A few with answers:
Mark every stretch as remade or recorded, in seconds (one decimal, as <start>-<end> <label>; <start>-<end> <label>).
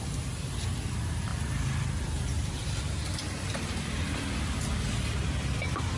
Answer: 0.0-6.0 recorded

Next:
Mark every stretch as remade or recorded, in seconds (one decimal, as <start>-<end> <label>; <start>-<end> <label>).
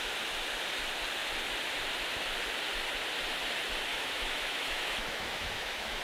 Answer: 0.0-3.9 recorded; 3.9-6.0 remade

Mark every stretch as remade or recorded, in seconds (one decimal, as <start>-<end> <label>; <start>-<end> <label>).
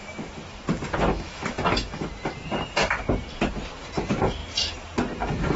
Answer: 0.0-1.1 recorded; 1.1-2.1 remade; 2.1-5.6 recorded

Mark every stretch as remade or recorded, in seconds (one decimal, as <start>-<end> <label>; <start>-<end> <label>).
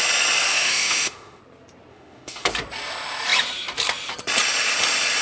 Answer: 0.0-0.5 recorded; 0.5-1.4 remade; 1.4-1.9 recorded; 1.9-2.5 remade; 2.5-5.2 recorded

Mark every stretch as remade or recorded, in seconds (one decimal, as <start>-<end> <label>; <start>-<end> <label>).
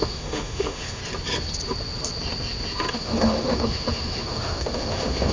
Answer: 0.0-1.0 remade; 1.0-2.9 recorded; 2.9-5.3 remade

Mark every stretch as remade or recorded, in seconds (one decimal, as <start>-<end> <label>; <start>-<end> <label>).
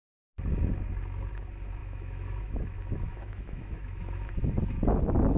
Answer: 0.0-1.8 recorded; 1.8-4.3 remade; 4.3-5.4 recorded